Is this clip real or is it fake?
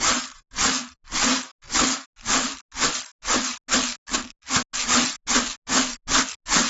real